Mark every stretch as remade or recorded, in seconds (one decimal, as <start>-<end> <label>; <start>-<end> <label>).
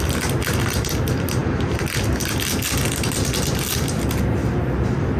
0.0-5.2 recorded